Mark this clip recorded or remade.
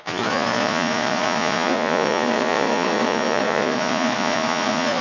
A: remade